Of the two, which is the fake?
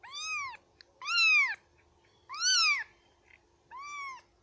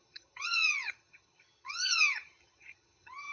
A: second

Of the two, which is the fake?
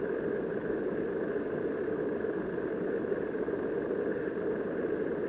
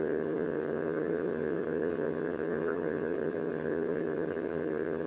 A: second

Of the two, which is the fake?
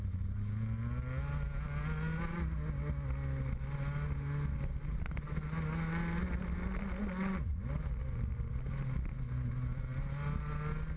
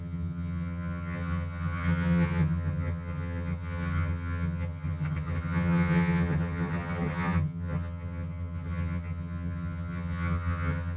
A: second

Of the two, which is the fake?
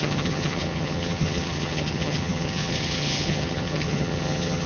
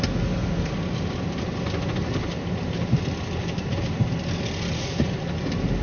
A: first